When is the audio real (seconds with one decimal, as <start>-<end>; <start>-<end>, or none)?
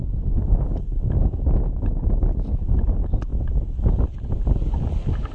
0.0-5.3